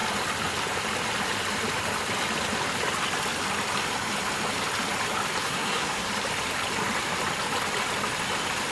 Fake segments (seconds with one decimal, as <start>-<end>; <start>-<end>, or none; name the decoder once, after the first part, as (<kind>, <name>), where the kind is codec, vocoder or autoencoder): 5.4-6.1 (codec, SNAC)